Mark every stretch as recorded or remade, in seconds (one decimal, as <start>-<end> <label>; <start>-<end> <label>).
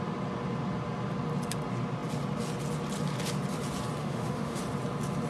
0.0-4.0 recorded; 4.0-4.6 remade; 4.6-5.3 recorded